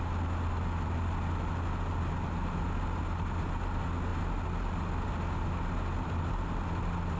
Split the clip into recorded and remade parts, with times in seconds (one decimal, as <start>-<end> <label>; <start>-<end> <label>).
0.0-7.2 recorded